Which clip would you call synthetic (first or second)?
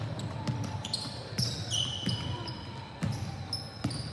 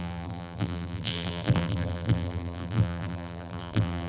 second